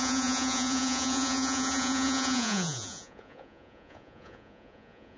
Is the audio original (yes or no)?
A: no